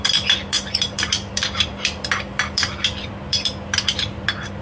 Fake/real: fake